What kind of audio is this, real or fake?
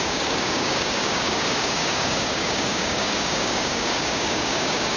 fake